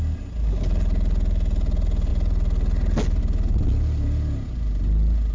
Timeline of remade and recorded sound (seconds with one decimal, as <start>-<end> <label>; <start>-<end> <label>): 0.0-5.3 recorded